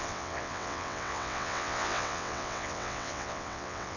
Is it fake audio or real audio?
fake